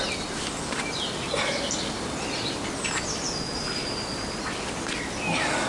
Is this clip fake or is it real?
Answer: real